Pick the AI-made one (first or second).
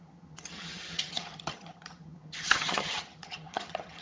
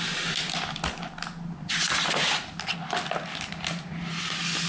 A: first